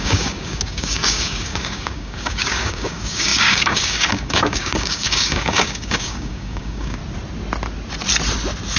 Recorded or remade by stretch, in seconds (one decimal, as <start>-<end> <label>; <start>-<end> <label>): 0.0-7.0 remade; 7.0-8.8 recorded